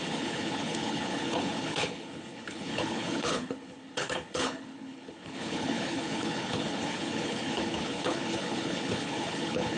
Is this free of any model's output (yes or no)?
no